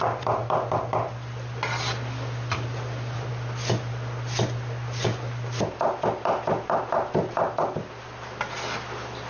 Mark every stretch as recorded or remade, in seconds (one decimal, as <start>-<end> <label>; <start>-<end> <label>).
0.0-9.3 recorded